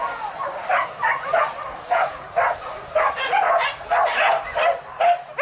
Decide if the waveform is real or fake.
real